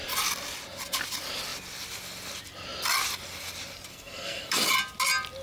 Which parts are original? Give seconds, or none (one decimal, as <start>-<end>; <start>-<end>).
0.0-3.9; 4.7-5.4